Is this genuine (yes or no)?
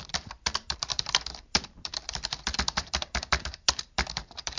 no